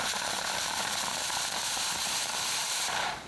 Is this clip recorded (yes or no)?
no